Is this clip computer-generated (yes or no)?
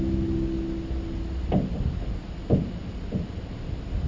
no